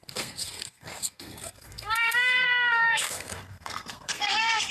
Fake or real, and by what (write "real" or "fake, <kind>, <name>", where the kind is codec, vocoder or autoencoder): fake, codec, SNAC